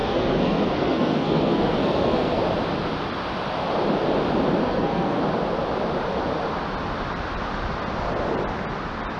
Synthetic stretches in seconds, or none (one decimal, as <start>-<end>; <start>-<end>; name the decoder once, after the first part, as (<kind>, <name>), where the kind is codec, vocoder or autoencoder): 0.0-2.4 (codec, SNAC); 4.6-5.2